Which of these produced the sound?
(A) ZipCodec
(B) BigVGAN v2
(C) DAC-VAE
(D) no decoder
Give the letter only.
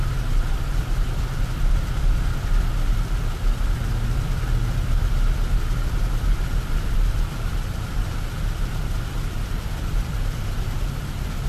B